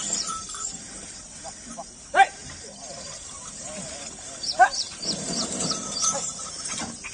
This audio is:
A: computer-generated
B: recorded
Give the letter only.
A